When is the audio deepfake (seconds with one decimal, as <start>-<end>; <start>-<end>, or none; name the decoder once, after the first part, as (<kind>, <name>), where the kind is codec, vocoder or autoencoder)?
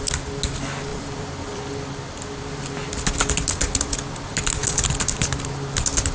0.9-1.7 (vocoder, BigVGAN v2)